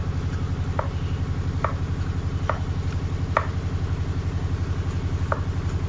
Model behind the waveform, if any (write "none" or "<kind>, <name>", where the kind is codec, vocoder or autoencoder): none